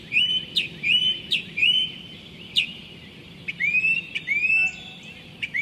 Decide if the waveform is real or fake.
fake